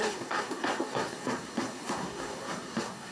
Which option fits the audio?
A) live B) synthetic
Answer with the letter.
B